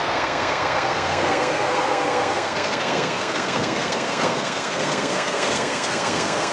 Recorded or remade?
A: remade